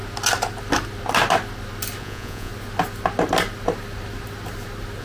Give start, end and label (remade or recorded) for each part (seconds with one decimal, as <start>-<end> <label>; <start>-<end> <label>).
0.0-2.0 recorded; 2.0-2.5 remade; 2.5-5.0 recorded